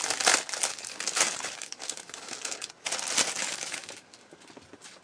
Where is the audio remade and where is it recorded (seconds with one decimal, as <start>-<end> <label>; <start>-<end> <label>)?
0.0-0.7 recorded; 0.7-2.7 remade; 2.7-3.4 recorded; 3.4-4.4 remade; 4.4-5.0 recorded